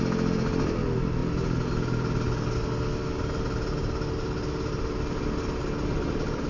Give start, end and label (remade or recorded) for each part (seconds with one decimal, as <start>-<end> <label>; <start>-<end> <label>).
0.0-6.5 recorded